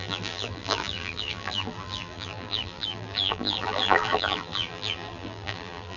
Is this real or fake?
fake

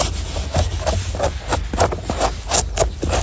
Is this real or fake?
real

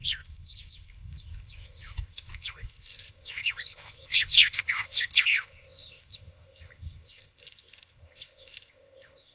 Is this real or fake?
fake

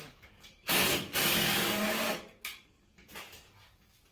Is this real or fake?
fake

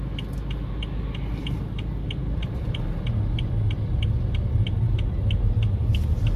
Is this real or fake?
real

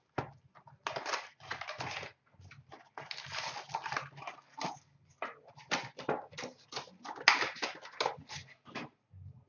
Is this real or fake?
real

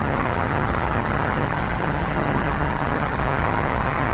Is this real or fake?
fake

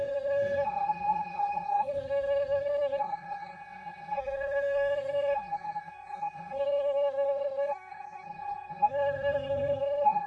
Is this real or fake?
fake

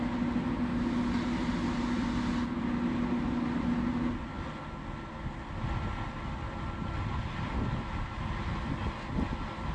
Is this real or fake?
real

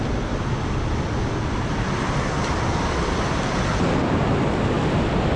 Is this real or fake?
real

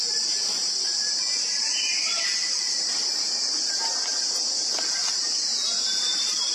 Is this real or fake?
fake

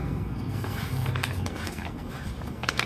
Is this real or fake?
fake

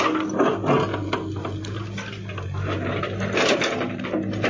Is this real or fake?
real